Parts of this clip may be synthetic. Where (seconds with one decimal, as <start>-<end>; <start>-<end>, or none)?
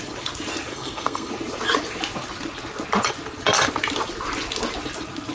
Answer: 0.7-1.3